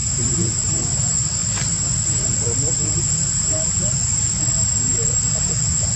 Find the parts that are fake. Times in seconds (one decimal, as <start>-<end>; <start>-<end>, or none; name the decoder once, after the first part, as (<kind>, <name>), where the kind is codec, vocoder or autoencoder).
0.0-0.9 (vocoder, BigVGAN v2); 1.4-3.0